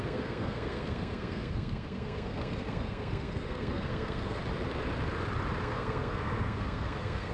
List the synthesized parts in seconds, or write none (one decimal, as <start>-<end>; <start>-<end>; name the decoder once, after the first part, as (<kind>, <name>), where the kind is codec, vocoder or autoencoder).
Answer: 0.0-4.4 (codec, SNAC); 5.6-7.3